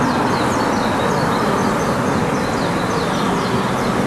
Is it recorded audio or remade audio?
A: recorded